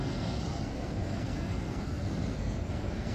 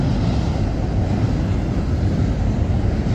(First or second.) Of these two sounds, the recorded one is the second